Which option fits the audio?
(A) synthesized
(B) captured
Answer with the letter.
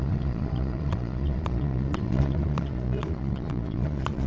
A